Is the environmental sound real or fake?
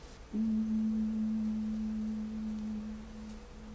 real